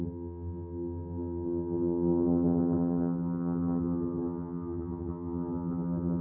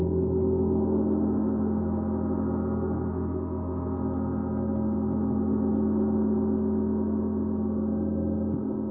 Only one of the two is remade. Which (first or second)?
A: first